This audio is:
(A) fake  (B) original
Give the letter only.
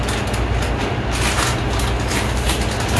B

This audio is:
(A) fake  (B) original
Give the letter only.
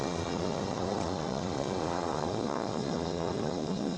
A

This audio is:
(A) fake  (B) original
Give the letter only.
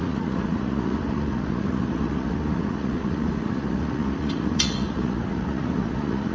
A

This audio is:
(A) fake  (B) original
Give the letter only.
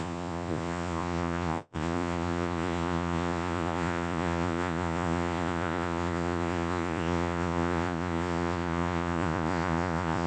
A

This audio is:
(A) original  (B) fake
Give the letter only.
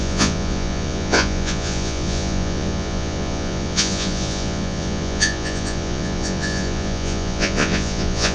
B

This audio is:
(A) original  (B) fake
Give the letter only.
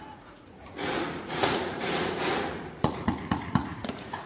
B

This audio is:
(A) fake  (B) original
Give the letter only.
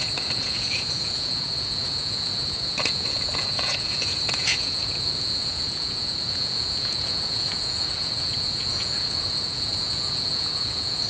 A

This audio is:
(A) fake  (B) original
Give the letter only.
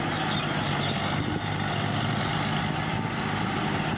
B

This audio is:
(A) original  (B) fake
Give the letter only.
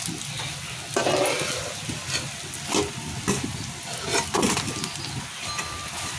A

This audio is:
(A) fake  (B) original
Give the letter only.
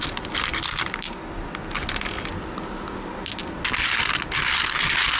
B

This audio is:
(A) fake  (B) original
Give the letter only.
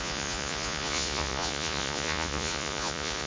A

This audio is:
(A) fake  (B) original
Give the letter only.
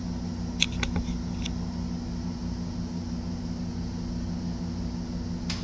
B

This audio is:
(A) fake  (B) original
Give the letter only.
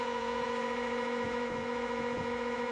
A